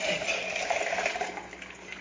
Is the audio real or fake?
real